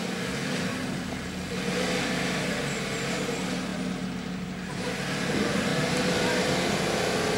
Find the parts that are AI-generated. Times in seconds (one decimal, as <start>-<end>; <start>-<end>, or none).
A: none